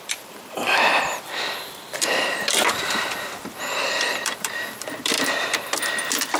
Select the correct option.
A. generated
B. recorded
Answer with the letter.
A